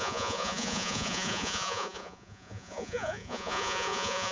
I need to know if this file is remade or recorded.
remade